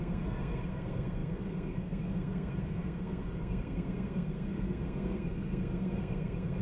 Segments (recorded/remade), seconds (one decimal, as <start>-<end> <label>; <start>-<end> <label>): 0.0-6.6 remade